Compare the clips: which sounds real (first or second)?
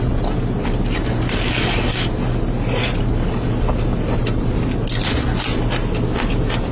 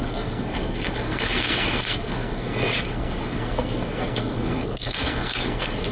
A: first